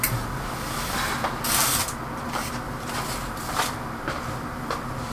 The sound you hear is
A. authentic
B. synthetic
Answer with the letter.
A